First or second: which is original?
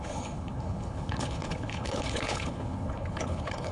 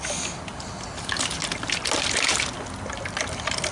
second